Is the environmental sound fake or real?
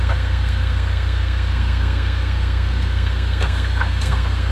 fake